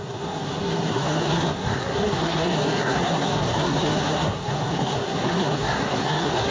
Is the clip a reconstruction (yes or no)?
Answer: yes